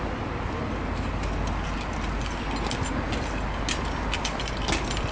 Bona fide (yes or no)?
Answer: yes